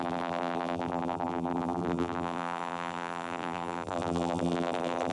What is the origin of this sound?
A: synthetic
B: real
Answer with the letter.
A